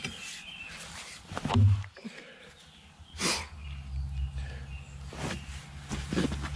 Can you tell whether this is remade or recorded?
recorded